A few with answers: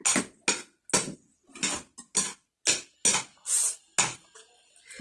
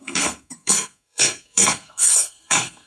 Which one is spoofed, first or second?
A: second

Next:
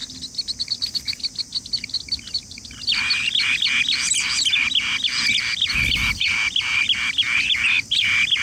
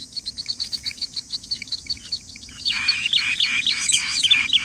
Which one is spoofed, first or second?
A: second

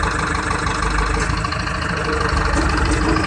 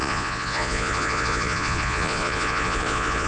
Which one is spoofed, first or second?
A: second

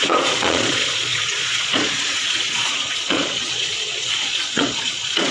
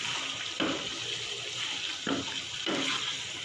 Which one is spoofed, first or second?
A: first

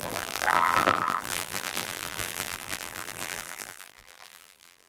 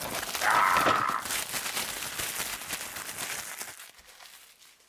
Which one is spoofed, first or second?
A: first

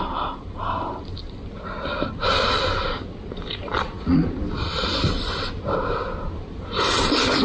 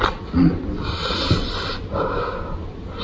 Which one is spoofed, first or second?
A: first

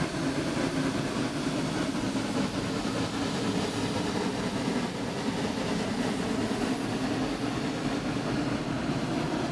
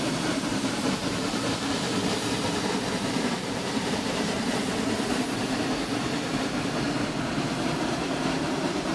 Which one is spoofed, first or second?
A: second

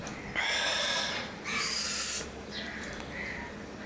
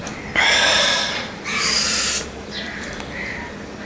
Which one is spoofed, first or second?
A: second